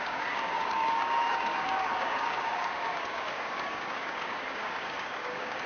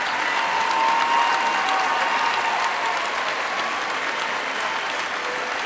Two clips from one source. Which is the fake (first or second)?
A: first